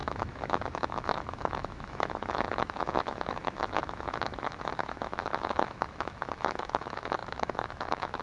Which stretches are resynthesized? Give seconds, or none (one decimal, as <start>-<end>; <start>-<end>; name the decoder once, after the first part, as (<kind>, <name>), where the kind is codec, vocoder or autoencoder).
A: 0.0-8.2 (autoencoder, DAC-VAE)